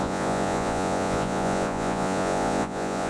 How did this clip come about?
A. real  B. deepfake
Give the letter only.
B